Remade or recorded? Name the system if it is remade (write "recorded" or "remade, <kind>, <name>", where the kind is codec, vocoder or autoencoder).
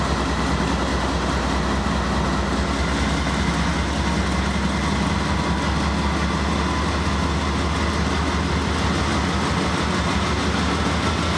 recorded